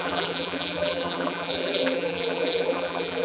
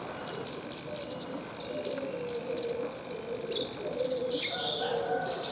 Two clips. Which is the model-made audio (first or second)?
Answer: first